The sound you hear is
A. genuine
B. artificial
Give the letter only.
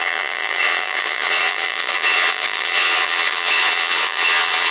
B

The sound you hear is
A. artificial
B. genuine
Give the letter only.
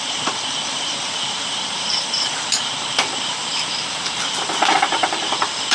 A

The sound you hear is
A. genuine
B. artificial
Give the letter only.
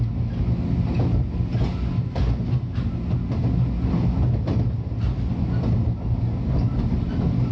A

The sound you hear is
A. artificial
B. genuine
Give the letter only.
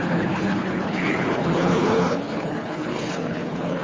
A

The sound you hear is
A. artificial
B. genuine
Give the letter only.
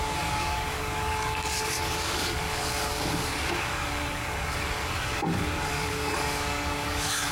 A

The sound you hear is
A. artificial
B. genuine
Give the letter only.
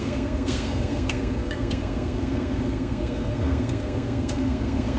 A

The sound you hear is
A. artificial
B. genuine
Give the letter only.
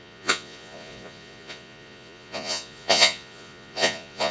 A